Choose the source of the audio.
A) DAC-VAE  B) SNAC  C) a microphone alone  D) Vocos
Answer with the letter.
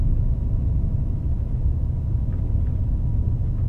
C